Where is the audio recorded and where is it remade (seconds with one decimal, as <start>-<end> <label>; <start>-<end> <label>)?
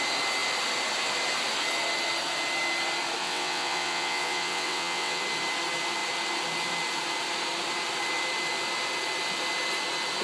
0.0-3.2 recorded; 3.2-5.2 remade; 5.2-10.2 recorded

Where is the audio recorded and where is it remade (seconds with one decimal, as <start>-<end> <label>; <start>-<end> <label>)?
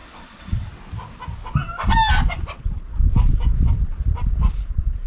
0.0-0.7 remade; 0.7-5.1 recorded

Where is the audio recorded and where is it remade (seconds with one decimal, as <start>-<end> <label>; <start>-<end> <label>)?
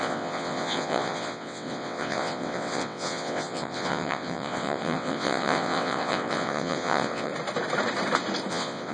0.0-7.3 remade; 7.3-8.5 recorded; 8.5-8.9 remade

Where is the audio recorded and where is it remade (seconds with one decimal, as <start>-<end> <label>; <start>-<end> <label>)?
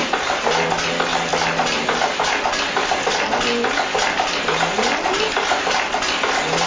0.0-6.7 recorded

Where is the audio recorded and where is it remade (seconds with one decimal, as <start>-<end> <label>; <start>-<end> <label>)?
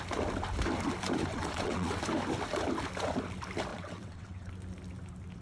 0.0-1.3 recorded; 1.3-2.0 remade; 2.0-3.7 recorded; 3.7-4.5 remade; 4.5-5.4 recorded